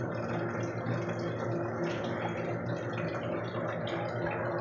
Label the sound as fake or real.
real